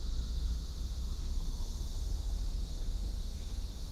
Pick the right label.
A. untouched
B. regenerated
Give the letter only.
B